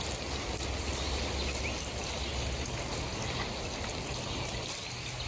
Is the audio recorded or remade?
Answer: recorded